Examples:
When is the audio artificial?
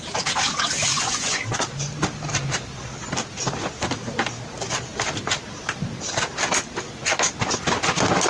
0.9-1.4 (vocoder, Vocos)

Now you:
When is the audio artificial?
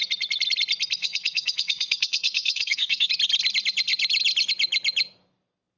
1.0-3.1 (codec, SNAC)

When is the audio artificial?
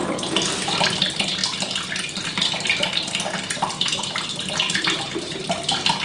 0.9-1.4 (vocoder, BigVGAN v2); 5.0-6.0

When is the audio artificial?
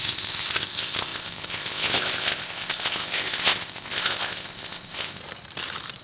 0.0-5.2 (codec, ZipCodec)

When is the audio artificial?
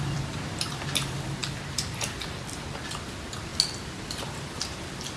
0.0-1.4 (vocoder, BigVGAN v2); 2.6-3.5; 4.6-5.2